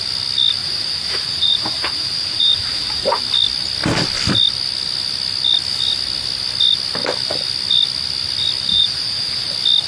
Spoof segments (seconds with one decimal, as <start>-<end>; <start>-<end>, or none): 0.6-3.2; 8.7-9.5